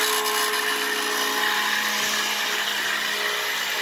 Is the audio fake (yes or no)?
no